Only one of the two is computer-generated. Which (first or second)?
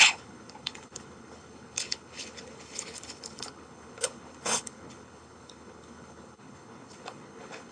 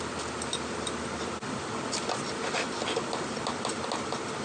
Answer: first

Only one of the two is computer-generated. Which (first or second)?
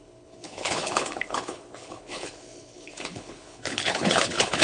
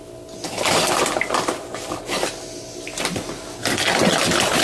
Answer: first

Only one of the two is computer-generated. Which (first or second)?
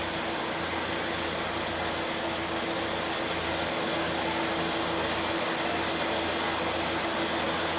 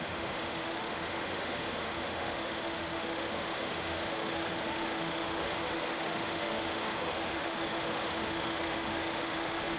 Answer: second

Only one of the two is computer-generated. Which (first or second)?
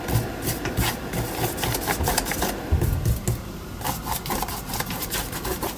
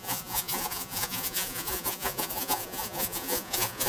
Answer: second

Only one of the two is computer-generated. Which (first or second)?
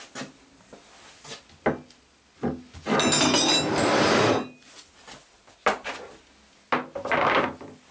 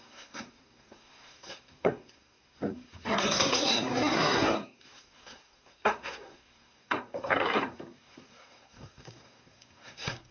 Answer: second